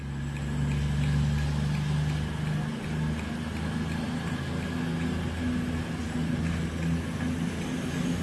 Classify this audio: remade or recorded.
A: recorded